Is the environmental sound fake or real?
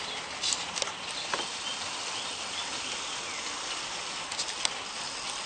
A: real